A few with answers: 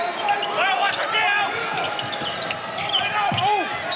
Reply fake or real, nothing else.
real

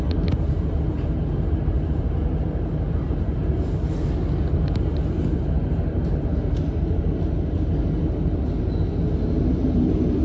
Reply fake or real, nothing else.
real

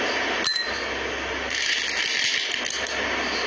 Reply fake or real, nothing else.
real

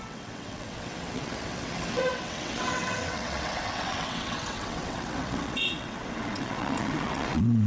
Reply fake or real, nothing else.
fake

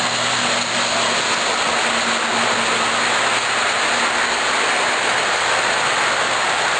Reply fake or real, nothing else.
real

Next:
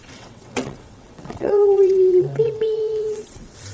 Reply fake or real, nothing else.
fake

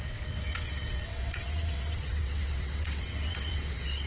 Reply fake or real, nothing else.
fake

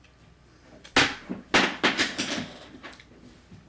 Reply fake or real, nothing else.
real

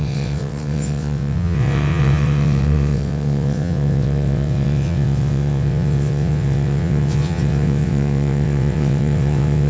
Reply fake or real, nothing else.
fake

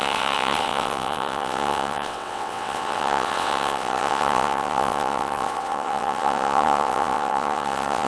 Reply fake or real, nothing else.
fake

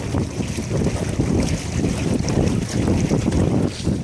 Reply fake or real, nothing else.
real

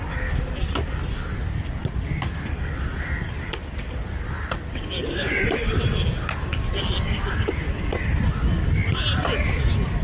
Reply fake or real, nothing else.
real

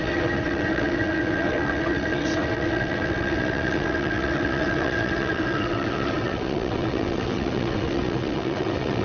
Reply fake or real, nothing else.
fake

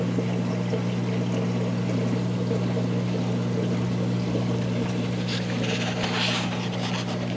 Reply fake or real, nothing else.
real